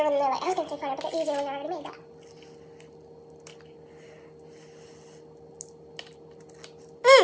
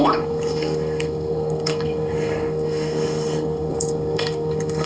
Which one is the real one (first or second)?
first